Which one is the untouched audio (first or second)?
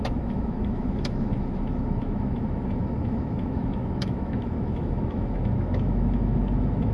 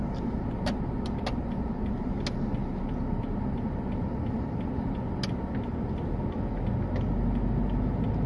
second